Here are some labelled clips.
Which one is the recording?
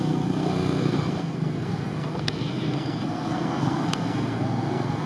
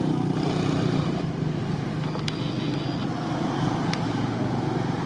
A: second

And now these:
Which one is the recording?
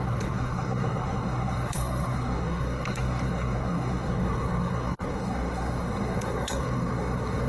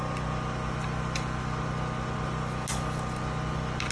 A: second